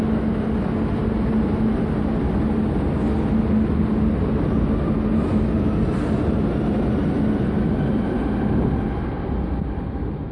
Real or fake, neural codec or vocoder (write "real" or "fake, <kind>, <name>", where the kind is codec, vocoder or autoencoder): real